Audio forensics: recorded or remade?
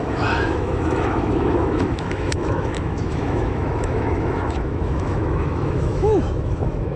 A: remade